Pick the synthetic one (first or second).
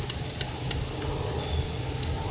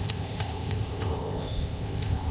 second